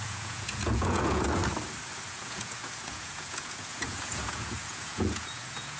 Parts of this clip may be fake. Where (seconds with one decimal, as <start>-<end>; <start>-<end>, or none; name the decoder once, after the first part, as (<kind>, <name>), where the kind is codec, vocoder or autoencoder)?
0.0-1.4 (vocoder, Vocos); 2.1-5.8